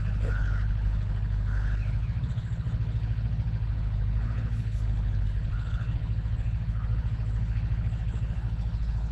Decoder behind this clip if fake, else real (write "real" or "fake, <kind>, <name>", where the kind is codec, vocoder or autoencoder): fake, codec, HILCodec